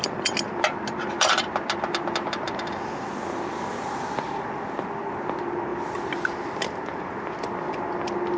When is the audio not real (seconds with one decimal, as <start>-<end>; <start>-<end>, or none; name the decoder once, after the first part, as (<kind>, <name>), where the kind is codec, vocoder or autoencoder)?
none